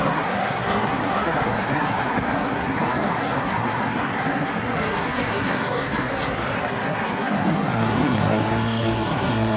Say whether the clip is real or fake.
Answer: fake